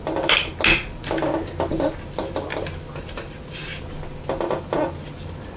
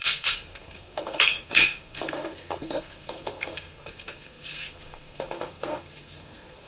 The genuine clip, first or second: first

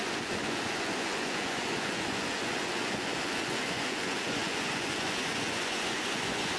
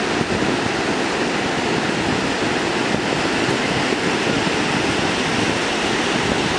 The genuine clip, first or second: second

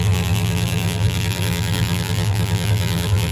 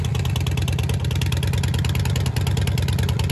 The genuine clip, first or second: second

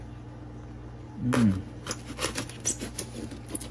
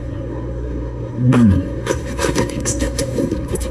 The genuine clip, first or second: first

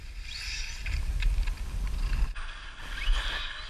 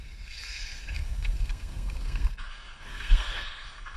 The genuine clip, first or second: first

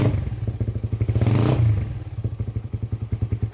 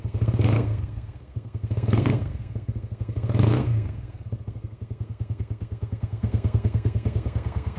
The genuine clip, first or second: first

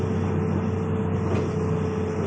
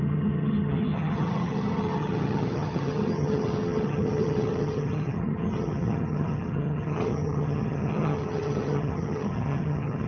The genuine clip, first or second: first